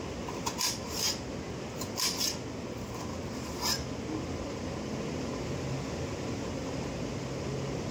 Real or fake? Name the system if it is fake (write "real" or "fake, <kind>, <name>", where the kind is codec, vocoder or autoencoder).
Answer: real